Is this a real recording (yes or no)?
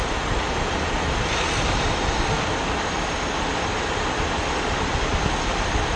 yes